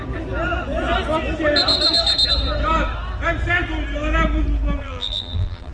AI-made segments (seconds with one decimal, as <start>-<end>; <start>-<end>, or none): 4.8-5.7

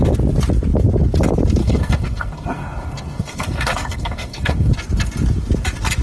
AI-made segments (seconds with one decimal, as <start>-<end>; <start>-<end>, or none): 1.6-4.7

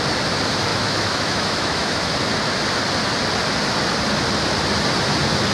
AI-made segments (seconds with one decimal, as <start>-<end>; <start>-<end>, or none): 0.7-2.1

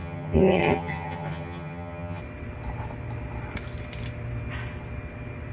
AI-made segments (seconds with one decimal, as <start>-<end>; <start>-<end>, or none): 0.0-2.2

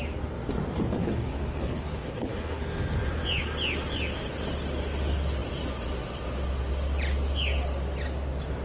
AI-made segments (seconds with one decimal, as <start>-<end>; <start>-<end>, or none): 1.0-2.6

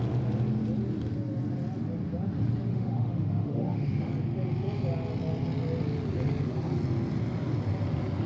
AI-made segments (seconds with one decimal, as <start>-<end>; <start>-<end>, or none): 2.7-4.1

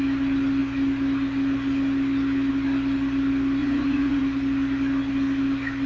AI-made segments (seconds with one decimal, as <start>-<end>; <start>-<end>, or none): 3.6-4.2